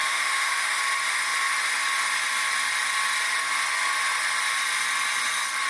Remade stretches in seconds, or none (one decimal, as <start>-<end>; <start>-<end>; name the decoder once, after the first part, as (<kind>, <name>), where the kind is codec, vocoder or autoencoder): 0.0-0.8 (autoencoder, DAC-VAE)